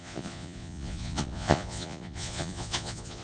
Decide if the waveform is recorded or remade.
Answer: remade